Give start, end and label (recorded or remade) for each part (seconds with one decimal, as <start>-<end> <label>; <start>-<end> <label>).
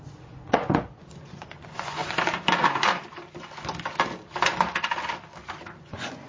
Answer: 0.0-2.0 remade; 2.0-5.8 recorded; 5.8-6.3 remade